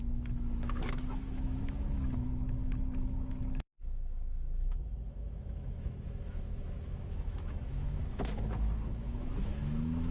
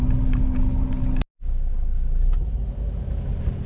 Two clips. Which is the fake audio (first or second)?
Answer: first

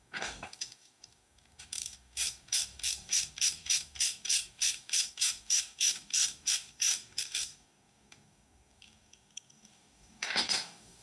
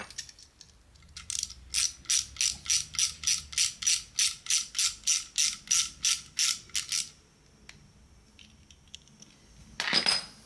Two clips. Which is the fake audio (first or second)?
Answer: first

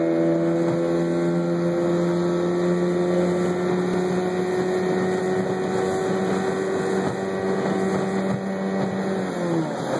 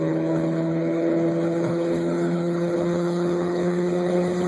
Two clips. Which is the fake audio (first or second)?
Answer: second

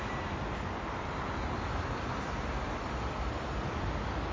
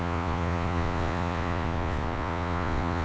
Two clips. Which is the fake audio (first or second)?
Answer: second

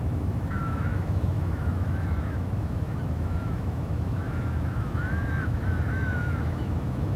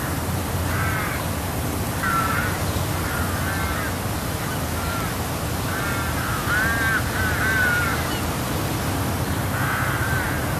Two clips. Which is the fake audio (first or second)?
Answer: first